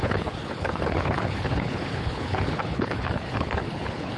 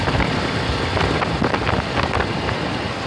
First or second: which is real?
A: second